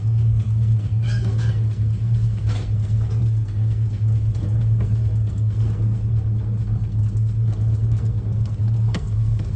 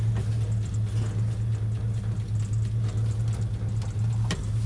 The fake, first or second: first